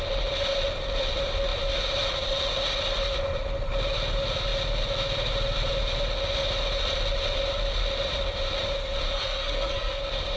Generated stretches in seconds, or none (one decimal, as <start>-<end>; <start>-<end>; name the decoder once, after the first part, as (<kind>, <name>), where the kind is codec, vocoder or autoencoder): 9.1-10.0 (codec, SNAC)